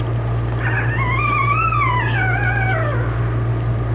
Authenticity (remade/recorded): recorded